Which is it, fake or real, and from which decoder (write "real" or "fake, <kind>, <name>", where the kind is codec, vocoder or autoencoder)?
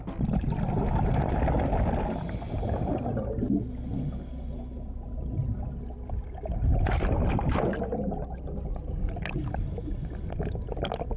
real